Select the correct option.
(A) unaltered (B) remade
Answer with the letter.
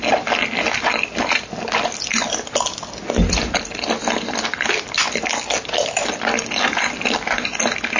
A